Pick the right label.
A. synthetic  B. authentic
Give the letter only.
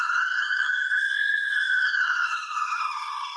A